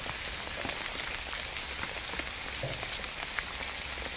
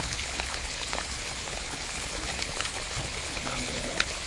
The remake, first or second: second